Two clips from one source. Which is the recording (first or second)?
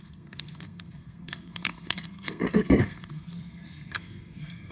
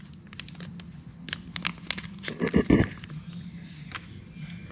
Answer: second